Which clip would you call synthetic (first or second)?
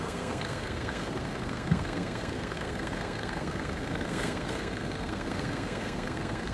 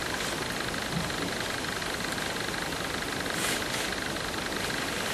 first